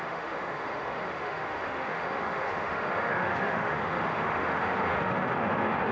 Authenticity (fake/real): fake